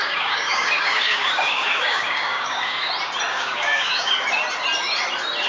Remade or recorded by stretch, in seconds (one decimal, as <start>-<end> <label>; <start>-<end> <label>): 0.0-2.9 remade; 2.9-3.3 recorded; 3.3-4.1 remade; 4.1-5.5 recorded